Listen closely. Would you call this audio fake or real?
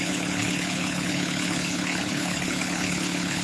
fake